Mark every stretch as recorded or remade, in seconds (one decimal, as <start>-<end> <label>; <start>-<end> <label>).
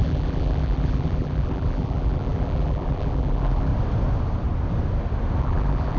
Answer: 0.0-3.7 remade; 3.7-5.4 recorded; 5.4-6.0 remade